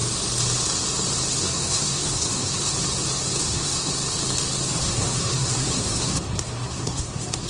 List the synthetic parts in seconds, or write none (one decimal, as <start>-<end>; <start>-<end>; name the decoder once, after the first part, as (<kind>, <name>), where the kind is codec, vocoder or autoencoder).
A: 1.4-2.7 (codec, SNAC); 3.4-3.9; 4.8-7.5